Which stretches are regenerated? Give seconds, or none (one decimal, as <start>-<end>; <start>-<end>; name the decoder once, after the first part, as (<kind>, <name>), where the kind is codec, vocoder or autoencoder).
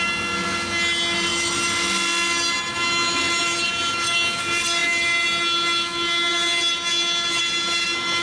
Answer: none